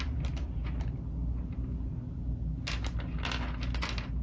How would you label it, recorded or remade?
recorded